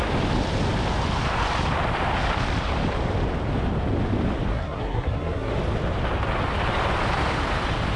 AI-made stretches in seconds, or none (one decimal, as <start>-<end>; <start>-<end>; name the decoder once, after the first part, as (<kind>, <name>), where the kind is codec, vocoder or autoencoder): 4.5-5.5 (codec, SNAC)